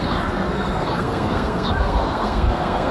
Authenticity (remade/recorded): remade